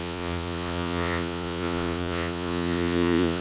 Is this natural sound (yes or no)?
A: no